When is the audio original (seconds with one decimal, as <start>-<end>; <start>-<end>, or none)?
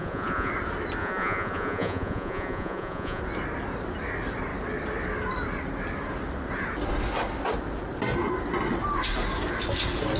0.5-1.0; 3.2-10.2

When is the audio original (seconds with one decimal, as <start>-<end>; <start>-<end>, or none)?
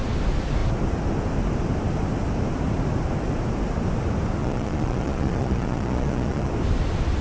0.0-4.4; 6.5-7.2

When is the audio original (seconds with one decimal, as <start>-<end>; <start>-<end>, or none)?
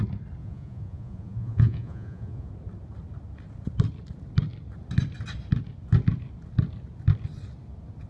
0.0-0.4; 2.5-8.1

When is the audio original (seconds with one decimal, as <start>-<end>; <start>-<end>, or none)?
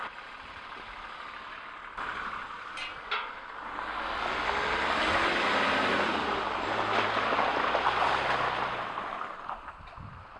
0.0-10.4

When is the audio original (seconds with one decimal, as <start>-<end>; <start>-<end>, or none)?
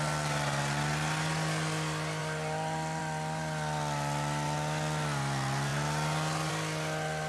0.0-2.2; 3.0-7.3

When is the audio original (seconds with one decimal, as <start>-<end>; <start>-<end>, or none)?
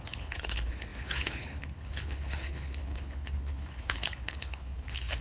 none